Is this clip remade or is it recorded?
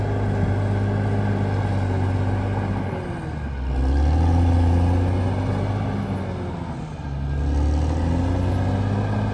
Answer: recorded